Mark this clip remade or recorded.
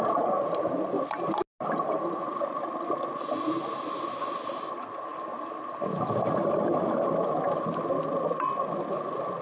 recorded